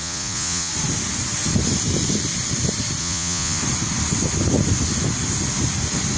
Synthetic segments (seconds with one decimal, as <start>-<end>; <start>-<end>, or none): 0.0-0.7; 3.0-3.6